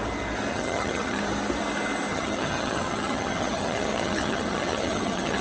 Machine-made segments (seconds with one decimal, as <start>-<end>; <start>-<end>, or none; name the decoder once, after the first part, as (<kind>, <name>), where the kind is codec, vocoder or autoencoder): 0.5-1.2 (vocoder, HiFi-GAN); 2.1-5.4